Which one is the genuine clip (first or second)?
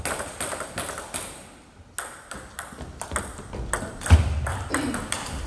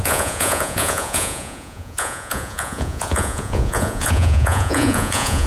first